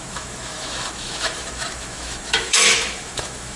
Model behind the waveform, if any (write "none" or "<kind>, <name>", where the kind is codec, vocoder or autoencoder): autoencoder, DAC-VAE